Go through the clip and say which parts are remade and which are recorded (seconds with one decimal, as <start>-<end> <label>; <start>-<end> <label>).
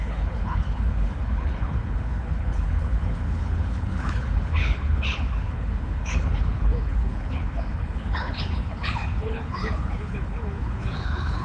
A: 0.0-11.4 remade